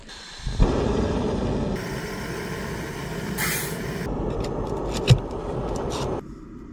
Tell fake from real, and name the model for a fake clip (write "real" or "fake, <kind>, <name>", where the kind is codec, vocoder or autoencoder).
real